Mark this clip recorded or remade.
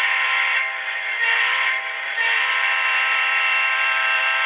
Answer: remade